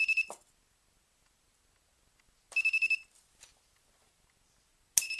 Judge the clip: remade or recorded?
recorded